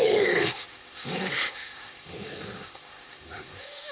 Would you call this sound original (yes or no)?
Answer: no